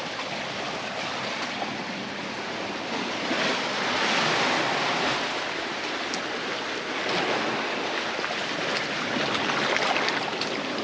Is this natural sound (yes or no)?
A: yes